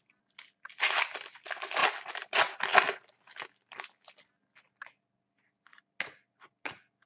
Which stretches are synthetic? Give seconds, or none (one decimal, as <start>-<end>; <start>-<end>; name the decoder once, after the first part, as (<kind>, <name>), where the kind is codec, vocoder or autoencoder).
none

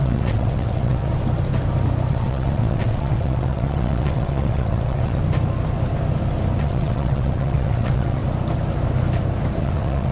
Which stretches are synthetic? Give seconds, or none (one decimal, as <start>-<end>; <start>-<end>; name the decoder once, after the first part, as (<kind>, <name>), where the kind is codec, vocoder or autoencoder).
0.0-1.1 (vocoder, WaveNeXt); 2.1-5.2; 6.6-8.2; 9.6-10.1